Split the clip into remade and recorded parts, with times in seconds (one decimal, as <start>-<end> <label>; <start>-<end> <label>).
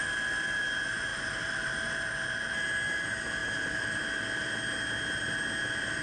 0.0-0.6 remade; 0.6-1.1 recorded; 1.1-2.1 remade; 2.1-3.4 recorded; 3.4-4.0 remade; 4.0-6.0 recorded